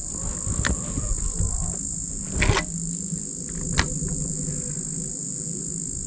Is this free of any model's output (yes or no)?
yes